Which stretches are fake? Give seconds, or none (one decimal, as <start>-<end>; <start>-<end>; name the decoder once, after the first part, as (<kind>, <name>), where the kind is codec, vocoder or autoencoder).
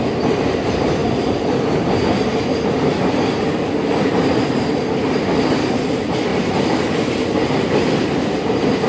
1.0-2.8 (vocoder, BigVGAN v2); 6.3-7.5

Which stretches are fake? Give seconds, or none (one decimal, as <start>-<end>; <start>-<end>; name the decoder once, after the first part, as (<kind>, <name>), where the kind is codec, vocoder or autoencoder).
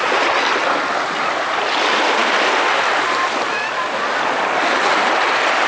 none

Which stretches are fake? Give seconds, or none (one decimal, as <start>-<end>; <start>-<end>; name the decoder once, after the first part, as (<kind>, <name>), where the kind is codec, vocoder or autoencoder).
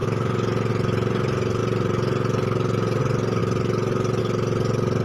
0.0-0.7 (vocoder, BigVGAN v2); 1.6-3.0; 3.4-4.2